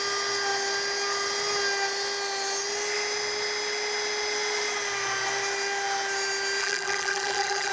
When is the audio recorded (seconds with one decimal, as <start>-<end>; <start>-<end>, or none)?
0.0-6.6